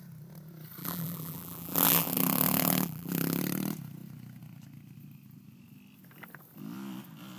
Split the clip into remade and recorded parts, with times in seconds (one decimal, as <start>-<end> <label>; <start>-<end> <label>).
0.0-0.8 recorded; 0.8-3.4 remade; 3.4-7.4 recorded

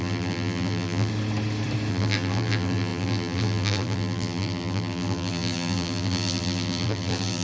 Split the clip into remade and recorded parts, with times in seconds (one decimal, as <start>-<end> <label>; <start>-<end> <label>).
0.0-1.1 remade; 1.1-1.9 recorded; 1.9-7.4 remade

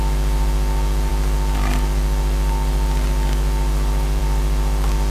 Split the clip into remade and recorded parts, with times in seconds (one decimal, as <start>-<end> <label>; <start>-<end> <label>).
0.0-5.1 recorded

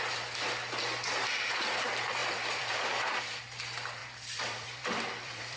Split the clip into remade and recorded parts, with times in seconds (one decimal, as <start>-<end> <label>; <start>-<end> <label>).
0.0-2.2 recorded; 2.2-3.4 remade; 3.4-4.0 recorded; 4.0-5.6 remade

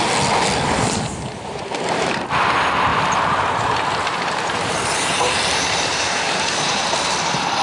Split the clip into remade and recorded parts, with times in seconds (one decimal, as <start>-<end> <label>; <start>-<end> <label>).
0.0-1.1 recorded; 1.1-2.2 remade; 2.2-2.9 recorded; 2.9-7.6 remade

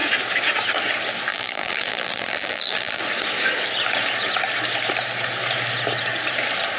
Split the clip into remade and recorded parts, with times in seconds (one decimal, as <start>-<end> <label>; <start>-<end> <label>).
0.0-1.3 recorded; 1.3-3.0 remade; 3.0-6.8 recorded